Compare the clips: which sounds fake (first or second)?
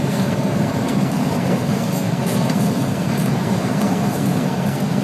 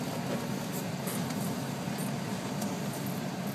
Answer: first